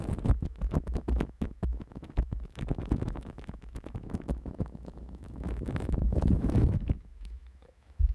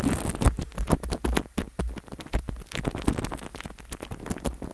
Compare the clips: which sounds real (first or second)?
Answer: second